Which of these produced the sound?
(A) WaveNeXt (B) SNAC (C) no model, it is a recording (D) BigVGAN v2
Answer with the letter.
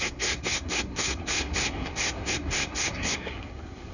B